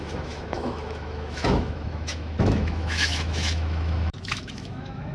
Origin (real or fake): fake